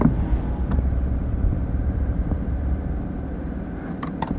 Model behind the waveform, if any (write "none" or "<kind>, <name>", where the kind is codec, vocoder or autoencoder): vocoder, BigVGAN v2